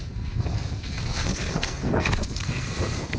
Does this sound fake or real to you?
fake